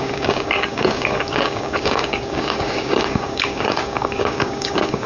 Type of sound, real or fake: fake